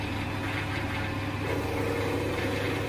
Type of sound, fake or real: real